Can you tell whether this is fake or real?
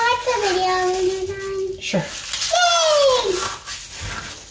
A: real